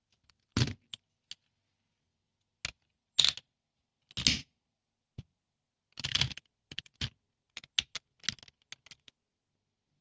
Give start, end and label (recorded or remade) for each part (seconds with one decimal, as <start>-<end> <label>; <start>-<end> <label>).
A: 0.0-10.0 recorded